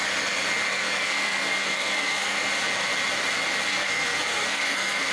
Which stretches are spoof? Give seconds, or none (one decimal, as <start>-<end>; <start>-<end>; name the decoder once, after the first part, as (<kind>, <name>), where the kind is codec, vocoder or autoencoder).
0.7-2.5 (codec, SNAC); 3.7-5.1